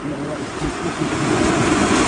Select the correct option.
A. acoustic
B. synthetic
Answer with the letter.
B